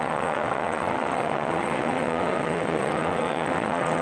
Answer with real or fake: fake